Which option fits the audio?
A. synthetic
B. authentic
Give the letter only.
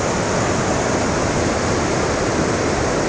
B